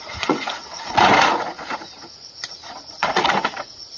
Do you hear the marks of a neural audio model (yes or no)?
yes